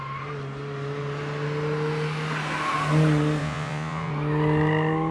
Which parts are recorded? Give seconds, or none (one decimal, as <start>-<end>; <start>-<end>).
0.0-3.4; 4.1-5.1